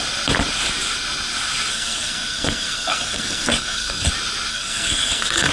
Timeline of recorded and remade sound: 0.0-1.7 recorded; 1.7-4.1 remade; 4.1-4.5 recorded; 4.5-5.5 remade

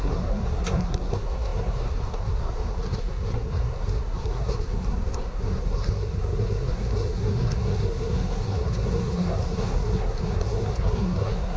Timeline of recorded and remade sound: 0.0-11.6 remade